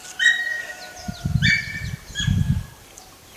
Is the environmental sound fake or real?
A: real